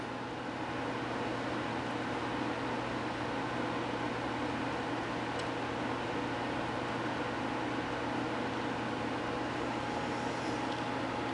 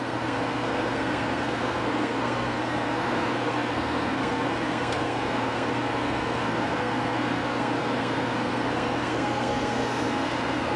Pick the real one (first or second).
first